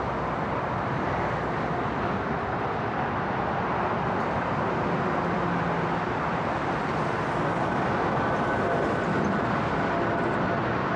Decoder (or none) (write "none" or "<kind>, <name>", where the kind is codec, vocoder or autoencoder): none